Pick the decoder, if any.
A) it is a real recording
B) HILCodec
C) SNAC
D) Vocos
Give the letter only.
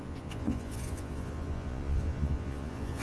D